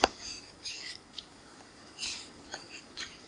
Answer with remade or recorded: remade